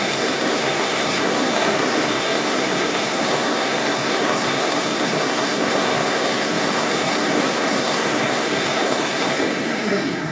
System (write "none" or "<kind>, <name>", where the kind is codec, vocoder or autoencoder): codec, SNAC